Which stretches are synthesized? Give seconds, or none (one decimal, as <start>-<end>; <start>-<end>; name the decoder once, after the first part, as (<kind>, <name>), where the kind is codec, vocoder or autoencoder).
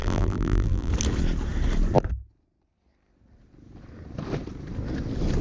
0.0-0.9 (vocoder, BigVGAN v2)